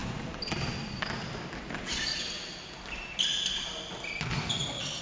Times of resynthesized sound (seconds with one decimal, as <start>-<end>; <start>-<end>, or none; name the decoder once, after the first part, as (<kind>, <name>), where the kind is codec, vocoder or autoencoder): none